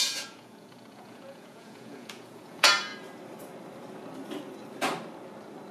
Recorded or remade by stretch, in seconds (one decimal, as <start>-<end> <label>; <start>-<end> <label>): 0.0-2.9 remade; 2.9-5.7 recorded